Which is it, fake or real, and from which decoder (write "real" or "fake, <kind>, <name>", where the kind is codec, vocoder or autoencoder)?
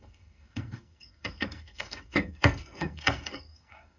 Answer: fake, codec, SNAC